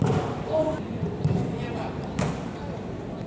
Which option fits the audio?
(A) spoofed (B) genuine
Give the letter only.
B